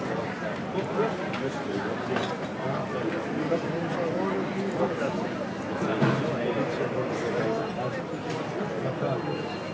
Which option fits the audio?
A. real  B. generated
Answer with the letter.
A